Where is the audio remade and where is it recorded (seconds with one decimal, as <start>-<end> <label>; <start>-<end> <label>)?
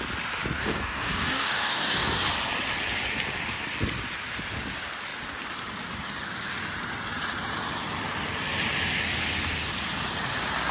0.0-0.6 recorded; 0.6-2.3 remade; 2.3-10.7 recorded